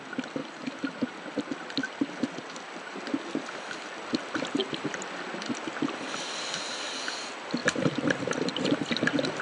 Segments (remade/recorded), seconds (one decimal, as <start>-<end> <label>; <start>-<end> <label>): 0.0-0.4 recorded; 0.4-2.8 remade; 2.8-7.6 recorded; 7.6-8.9 remade; 8.9-9.4 recorded